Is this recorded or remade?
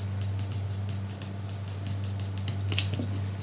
recorded